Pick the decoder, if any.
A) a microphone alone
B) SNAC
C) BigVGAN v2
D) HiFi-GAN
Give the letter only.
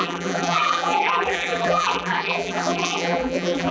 C